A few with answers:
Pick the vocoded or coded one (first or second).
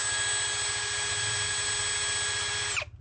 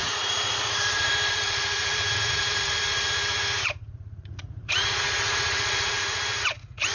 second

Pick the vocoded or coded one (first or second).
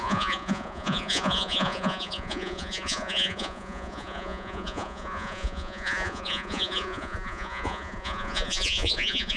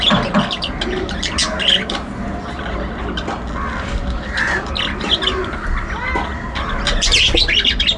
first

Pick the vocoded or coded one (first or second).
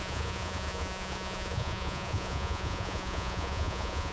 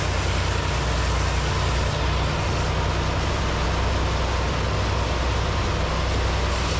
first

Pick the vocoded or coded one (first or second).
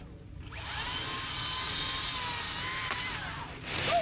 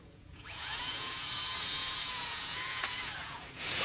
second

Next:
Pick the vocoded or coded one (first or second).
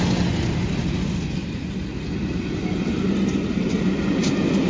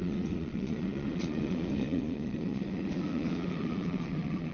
second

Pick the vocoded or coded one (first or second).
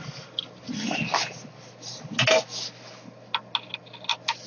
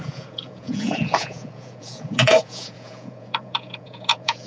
second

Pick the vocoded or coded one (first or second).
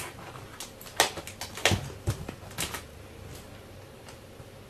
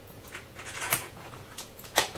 second